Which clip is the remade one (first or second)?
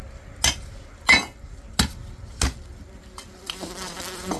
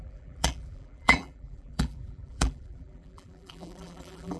second